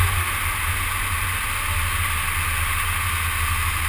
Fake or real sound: real